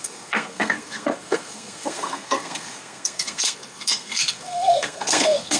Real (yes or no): no